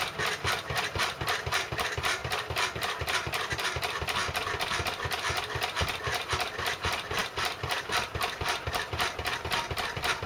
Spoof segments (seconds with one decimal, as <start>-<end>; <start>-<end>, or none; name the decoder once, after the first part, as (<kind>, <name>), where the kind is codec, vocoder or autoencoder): none